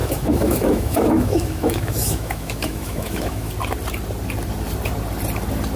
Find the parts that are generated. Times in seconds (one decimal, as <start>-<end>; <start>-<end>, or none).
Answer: 0.0-3.5